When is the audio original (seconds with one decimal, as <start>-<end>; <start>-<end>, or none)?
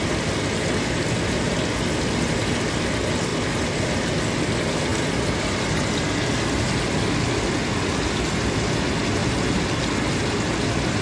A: 0.0-11.0